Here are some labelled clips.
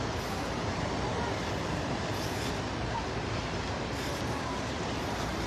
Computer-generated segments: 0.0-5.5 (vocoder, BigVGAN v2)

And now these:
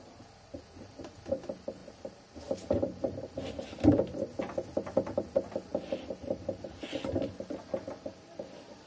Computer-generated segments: 5.7-7.3 (vocoder, BigVGAN v2)

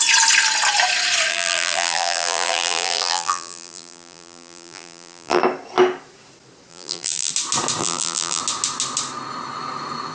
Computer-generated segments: 1.3-5.4 (vocoder, BigVGAN v2); 6.7-7.3; 7.8-8.4

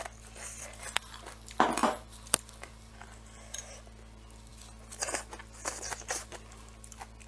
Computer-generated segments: 1.8-2.9 (vocoder, BigVGAN v2)